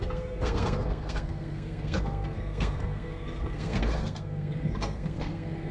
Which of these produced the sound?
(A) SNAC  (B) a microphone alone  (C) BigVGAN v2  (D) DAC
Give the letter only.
A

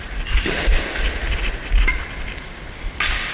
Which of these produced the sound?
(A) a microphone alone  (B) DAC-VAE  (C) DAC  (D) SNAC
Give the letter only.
A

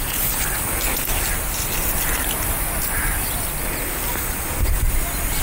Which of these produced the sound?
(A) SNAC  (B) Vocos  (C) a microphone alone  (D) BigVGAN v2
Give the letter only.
C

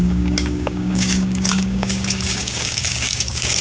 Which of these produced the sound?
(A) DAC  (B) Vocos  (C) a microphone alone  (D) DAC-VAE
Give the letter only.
A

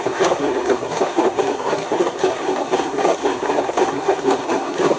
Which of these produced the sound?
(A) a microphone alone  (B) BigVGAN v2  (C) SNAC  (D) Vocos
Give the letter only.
C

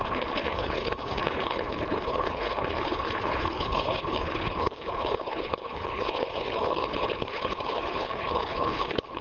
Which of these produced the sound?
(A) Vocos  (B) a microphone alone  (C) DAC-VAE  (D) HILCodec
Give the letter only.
D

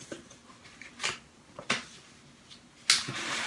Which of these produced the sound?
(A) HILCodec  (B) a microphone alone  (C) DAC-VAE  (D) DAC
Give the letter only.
B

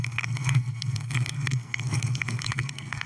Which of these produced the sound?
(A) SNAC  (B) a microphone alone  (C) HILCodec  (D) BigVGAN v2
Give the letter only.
A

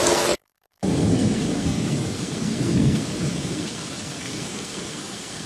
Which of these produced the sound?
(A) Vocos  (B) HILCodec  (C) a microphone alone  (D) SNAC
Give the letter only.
D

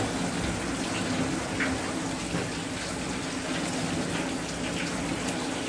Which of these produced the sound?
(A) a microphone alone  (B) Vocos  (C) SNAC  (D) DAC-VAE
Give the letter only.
A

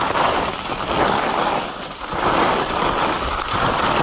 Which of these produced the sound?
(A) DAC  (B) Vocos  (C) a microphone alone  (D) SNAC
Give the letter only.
C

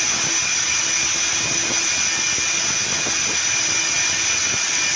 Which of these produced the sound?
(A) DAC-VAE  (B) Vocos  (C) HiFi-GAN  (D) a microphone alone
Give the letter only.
D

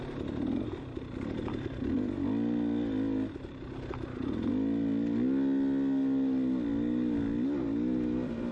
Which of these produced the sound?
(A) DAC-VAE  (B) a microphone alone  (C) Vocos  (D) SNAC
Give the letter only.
B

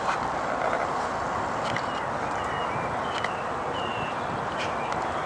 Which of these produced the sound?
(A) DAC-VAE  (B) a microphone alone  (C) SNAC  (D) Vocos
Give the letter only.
B